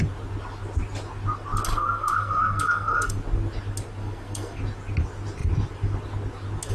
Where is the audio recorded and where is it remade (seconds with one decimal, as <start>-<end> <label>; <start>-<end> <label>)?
0.0-1.7 recorded; 1.7-3.1 remade; 3.1-4.0 recorded; 4.0-4.6 remade; 4.6-6.7 recorded